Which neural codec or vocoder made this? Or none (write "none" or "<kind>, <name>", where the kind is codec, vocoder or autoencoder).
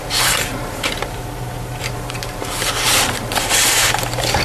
vocoder, BigVGAN v2